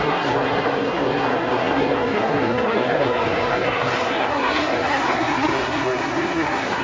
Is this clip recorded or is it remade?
remade